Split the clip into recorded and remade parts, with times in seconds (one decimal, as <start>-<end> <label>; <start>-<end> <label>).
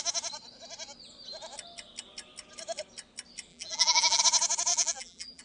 0.0-3.5 recorded; 3.5-4.2 remade; 4.2-4.7 recorded; 4.7-5.4 remade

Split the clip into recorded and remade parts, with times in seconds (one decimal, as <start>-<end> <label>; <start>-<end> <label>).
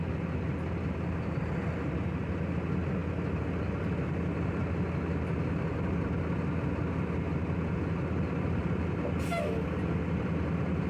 0.0-10.9 recorded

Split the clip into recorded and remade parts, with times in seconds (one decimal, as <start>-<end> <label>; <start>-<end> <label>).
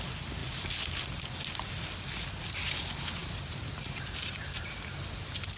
0.0-3.2 recorded; 3.2-4.9 remade; 4.9-5.6 recorded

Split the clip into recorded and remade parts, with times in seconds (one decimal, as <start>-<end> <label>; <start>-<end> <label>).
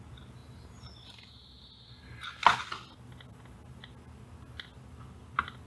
0.0-0.4 recorded; 0.4-1.5 remade; 1.5-5.7 recorded